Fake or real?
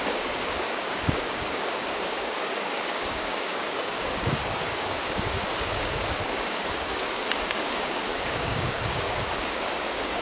fake